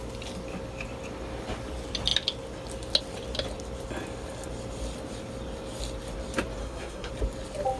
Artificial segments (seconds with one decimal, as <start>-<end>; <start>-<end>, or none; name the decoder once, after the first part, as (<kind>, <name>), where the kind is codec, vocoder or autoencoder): 6.6-7.1 (codec, SNAC)